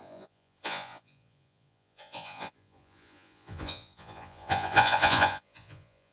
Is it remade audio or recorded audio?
remade